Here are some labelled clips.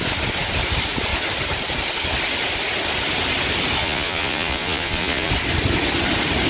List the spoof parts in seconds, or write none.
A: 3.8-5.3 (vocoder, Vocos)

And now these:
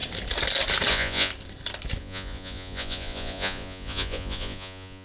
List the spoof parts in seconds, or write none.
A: 0.9-1.3 (vocoder, Vocos); 2.0-5.0

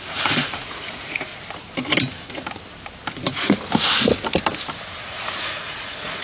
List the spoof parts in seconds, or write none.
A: 0.0-1.3 (vocoder, Vocos); 5.0-6.2

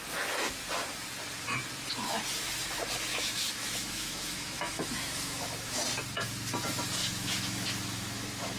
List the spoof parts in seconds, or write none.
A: 3.1-5.8 (autoencoder, DAC-VAE); 7.0-8.6

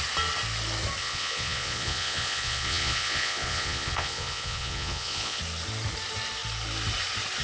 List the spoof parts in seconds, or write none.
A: 1.0-5.4 (vocoder, Vocos)

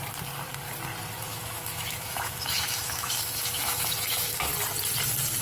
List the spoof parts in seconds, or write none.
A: 1.3-4.5 (autoencoder, DAC-VAE)